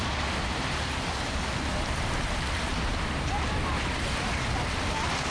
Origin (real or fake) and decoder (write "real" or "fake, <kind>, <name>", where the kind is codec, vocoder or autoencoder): real